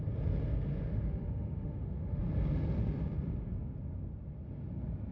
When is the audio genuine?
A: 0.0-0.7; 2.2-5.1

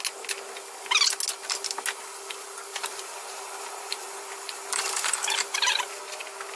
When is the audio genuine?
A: 0.0-2.7; 6.0-6.6

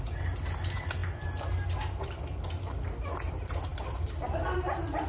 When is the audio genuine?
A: 0.0-3.7

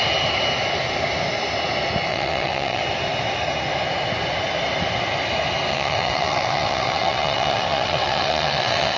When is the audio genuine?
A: 0.0-2.1; 2.8-5.7

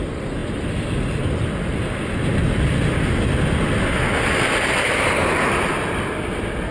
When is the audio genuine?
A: 0.0-6.7